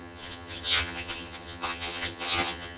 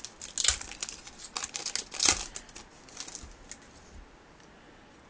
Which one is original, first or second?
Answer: second